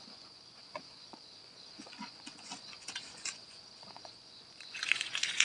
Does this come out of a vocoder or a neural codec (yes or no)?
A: yes